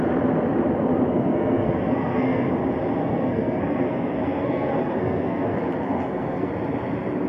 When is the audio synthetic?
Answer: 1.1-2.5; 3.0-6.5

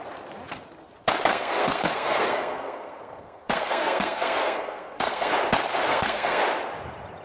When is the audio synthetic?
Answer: 1.3-5.3; 5.9-6.4

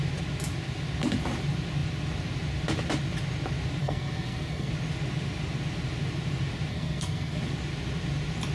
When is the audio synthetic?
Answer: 3.8-4.7; 6.7-7.4

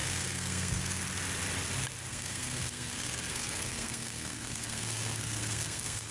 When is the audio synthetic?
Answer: 0.0-1.0; 2.1-6.1

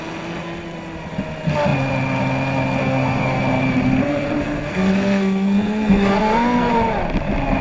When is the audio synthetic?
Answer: 2.8-3.4; 4.1-6.7

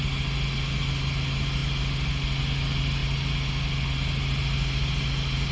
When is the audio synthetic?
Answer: none

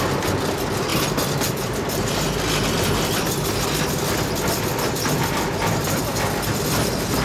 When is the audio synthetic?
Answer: none